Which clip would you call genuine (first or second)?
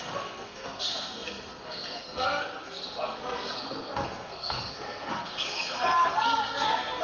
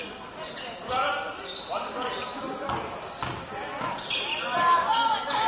second